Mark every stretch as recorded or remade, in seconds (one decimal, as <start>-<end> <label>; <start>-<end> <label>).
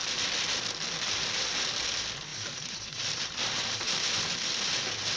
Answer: 0.0-2.3 recorded; 2.3-4.1 remade; 4.1-5.2 recorded